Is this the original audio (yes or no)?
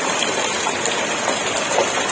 yes